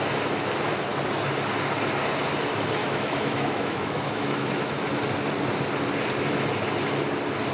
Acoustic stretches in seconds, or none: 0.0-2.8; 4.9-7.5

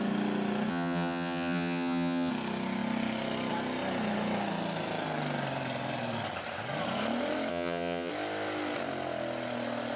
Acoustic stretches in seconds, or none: 0.0-0.7; 2.3-7.5; 8.1-10.0

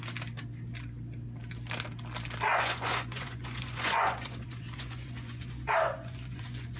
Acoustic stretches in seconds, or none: 0.0-2.5

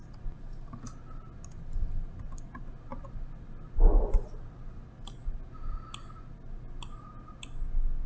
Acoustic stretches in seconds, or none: 0.0-8.1

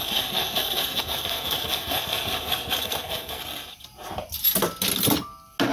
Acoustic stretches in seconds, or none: 3.4-5.7